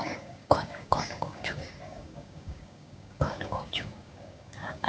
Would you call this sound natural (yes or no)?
no